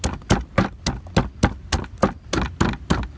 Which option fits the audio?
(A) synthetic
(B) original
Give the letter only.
B